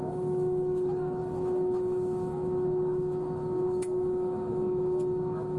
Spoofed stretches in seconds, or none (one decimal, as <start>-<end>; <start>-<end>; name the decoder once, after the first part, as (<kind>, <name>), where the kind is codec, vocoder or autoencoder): 0.0-5.6 (autoencoder, DAC-VAE)